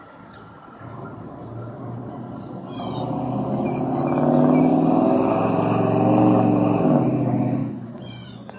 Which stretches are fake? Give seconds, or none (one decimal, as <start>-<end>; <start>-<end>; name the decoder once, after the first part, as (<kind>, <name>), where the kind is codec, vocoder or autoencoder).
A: 7.6-8.6 (vocoder, Vocos)